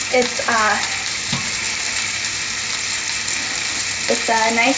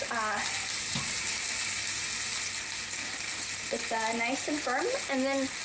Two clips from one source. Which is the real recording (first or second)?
second